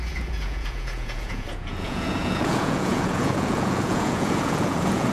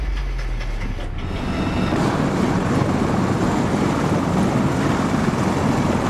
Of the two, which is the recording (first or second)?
second